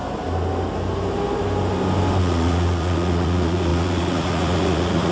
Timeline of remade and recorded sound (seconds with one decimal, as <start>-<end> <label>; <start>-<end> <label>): 0.0-2.2 recorded; 2.2-5.1 remade